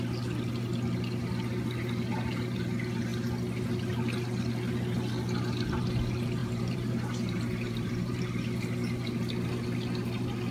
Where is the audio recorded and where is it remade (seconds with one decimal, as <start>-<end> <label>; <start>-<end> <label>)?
0.0-6.4 recorded; 6.4-8.2 remade; 8.2-10.5 recorded